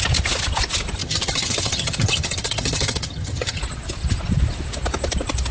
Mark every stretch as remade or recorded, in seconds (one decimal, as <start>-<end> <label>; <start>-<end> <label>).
0.0-1.0 recorded; 1.0-3.6 remade; 3.6-5.5 recorded